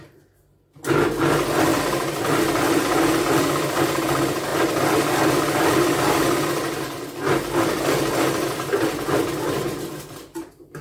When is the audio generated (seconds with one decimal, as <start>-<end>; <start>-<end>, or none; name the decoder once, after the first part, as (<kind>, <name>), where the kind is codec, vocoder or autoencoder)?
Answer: none